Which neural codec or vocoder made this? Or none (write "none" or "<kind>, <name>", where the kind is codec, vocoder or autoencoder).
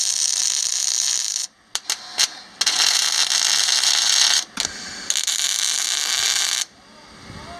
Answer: none